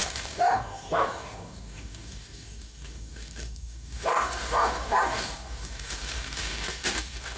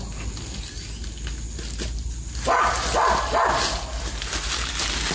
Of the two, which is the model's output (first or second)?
first